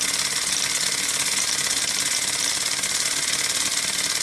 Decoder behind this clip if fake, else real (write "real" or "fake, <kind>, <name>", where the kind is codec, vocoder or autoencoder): real